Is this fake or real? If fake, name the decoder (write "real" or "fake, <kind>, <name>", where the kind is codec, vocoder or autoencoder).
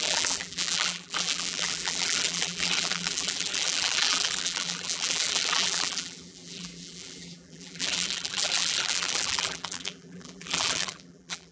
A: fake, vocoder, BigVGAN v2